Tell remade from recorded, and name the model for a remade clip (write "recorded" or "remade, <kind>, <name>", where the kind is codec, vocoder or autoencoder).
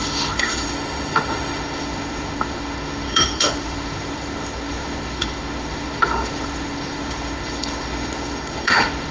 remade, autoencoder, DAC-VAE